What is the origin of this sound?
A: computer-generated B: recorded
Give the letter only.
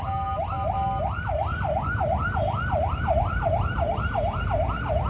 B